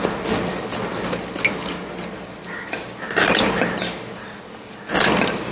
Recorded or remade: recorded